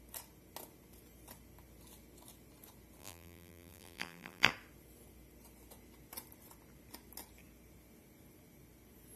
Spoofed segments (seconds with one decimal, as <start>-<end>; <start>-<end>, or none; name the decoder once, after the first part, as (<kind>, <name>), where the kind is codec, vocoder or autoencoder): 3.0-4.5 (vocoder, BigVGAN v2)